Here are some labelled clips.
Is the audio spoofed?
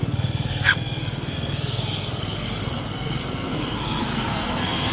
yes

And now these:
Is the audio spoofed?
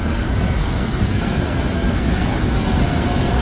yes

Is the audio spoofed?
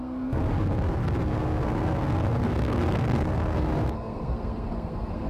yes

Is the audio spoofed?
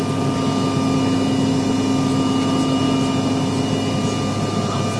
no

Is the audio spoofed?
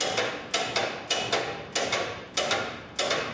no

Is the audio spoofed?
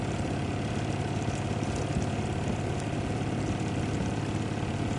no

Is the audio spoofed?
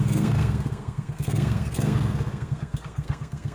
yes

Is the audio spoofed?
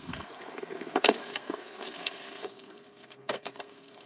yes